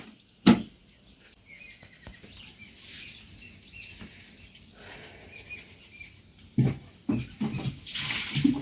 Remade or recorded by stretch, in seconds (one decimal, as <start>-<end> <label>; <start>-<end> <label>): 0.0-8.6 recorded